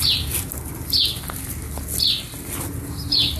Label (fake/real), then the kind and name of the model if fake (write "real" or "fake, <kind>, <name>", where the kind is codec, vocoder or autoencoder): real